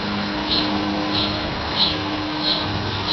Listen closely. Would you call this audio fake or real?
fake